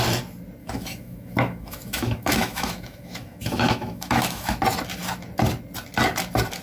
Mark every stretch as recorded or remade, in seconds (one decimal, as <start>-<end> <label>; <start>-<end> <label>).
0.0-0.6 recorded; 0.6-4.6 remade; 4.6-6.6 recorded